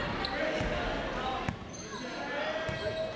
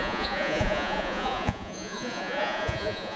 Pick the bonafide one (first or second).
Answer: first